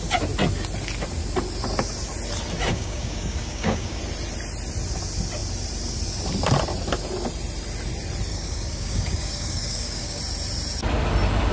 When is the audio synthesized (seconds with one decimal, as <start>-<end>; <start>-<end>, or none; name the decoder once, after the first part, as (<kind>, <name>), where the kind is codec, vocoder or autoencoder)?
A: 2.7-4.0 (codec, DAC); 8.3-10.2